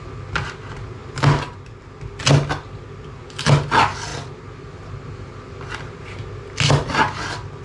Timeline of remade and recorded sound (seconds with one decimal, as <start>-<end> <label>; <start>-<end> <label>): 0.0-7.6 recorded